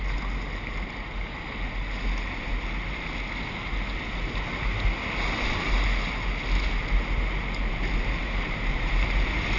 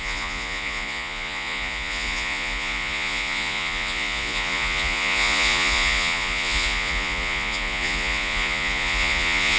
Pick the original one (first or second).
first